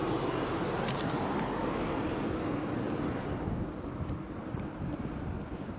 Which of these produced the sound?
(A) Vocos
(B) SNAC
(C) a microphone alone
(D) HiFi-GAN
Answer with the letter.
C